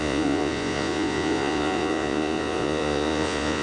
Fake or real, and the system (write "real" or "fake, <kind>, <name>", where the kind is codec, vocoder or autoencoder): fake, vocoder, Vocos